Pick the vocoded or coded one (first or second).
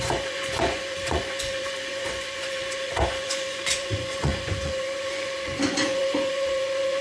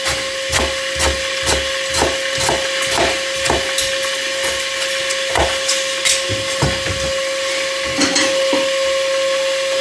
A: first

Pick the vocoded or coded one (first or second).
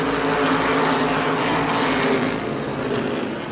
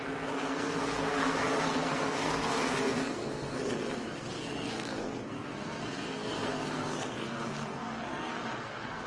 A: second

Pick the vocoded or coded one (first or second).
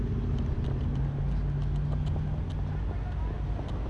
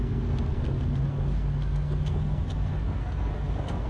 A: second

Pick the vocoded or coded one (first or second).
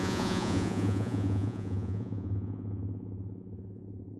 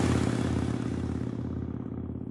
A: first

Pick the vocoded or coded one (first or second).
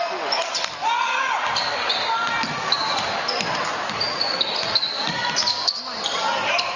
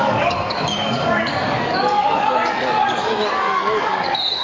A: second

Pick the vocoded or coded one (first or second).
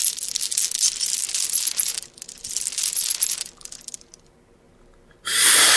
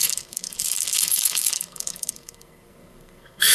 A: second